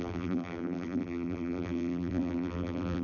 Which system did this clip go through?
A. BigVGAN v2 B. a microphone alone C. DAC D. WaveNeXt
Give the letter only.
A